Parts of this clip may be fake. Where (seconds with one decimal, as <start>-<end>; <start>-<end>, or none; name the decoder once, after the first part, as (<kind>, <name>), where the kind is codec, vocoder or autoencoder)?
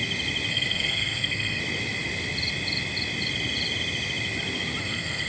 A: 0.5-1.6 (codec, SNAC); 4.8-5.3